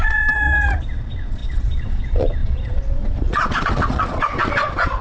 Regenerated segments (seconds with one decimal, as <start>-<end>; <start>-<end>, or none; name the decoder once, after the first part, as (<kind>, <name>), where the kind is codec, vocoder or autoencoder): 0.0-5.0 (vocoder, Vocos)